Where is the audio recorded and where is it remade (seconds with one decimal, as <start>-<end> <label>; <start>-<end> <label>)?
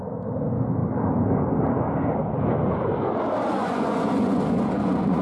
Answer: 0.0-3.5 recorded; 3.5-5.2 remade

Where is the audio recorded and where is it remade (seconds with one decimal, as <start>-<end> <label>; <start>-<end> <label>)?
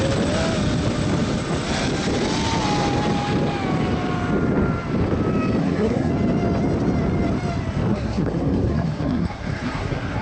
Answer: 0.0-5.6 recorded; 5.6-6.1 remade; 6.1-7.9 recorded; 7.9-10.2 remade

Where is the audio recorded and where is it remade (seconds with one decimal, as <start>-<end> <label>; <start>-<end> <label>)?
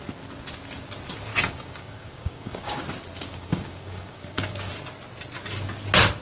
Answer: 0.0-1.3 recorded; 1.3-2.8 remade; 2.8-3.3 recorded; 3.3-4.7 remade; 4.7-6.2 recorded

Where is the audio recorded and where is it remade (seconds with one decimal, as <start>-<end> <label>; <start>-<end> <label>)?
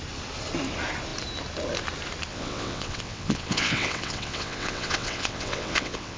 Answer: 0.0-2.3 recorded; 2.3-6.2 remade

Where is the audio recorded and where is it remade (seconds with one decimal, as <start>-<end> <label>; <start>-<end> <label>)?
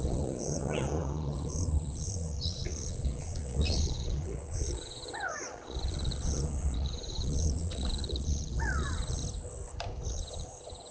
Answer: 0.0-9.2 remade; 9.2-10.1 recorded; 10.1-10.9 remade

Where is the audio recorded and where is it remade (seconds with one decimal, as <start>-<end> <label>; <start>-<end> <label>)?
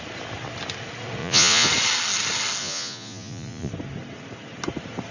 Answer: 0.0-1.2 recorded; 1.2-1.7 remade; 1.7-2.6 recorded; 2.6-3.7 remade; 3.7-5.1 recorded